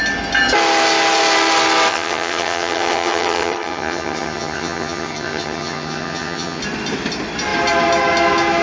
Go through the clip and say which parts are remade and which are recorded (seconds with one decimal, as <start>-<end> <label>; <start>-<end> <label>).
0.0-1.9 recorded; 1.9-6.6 remade; 6.6-8.6 recorded